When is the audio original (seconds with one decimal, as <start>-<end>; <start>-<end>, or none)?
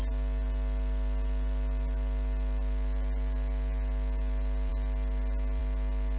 0.0-6.2